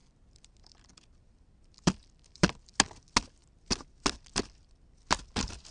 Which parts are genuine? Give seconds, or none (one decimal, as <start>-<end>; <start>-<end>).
2.6-5.7